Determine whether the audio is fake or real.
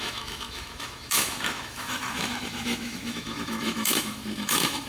fake